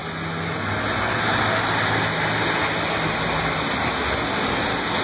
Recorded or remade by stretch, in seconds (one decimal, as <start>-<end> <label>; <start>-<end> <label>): 0.0-5.0 recorded